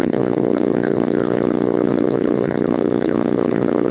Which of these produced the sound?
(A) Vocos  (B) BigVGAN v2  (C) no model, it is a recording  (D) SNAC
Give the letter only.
D